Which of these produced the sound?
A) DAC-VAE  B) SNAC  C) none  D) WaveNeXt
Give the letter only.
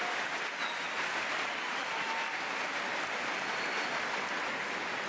C